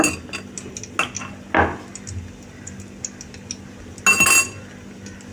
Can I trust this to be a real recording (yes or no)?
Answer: yes